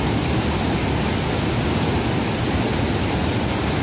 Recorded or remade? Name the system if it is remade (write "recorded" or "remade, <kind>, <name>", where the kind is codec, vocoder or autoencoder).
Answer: recorded